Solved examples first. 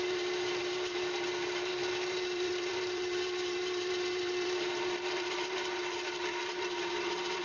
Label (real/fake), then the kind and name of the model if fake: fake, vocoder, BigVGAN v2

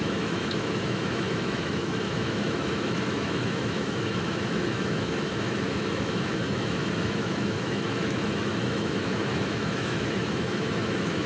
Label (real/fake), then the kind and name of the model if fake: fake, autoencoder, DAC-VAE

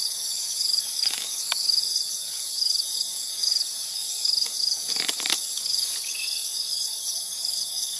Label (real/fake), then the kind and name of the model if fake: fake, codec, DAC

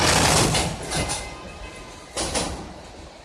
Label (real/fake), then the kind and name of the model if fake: real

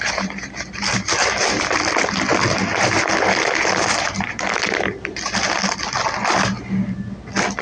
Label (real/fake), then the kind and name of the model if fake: real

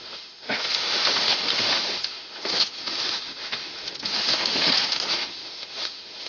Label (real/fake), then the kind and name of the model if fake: fake, autoencoder, DAC-VAE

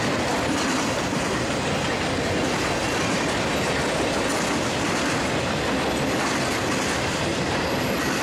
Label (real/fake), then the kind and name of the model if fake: real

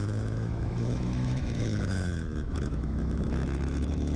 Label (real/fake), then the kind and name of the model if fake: fake, autoencoder, DAC-VAE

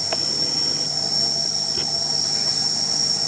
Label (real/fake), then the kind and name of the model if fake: real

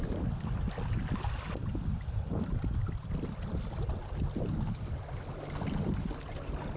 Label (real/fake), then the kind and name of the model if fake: real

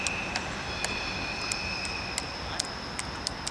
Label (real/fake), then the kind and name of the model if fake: real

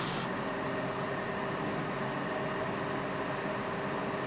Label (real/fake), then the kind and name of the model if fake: real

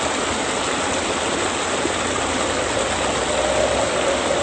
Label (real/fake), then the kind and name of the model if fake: real